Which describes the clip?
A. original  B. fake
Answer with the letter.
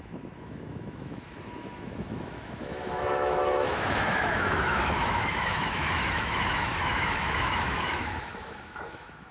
B